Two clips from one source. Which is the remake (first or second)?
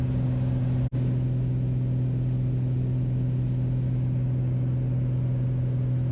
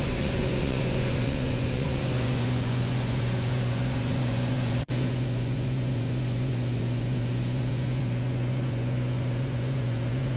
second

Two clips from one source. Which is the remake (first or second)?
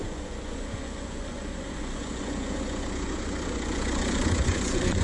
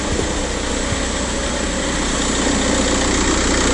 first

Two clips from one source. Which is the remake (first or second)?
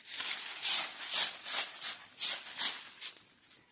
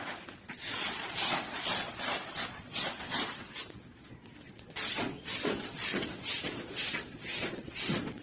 second